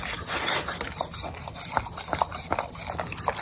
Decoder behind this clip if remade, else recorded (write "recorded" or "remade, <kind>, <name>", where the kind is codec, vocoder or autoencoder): recorded